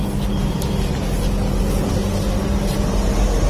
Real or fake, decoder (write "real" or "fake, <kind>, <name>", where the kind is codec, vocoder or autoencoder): real